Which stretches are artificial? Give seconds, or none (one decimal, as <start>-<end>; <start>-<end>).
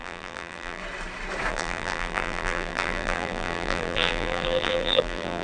0.0-0.8; 1.5-5.4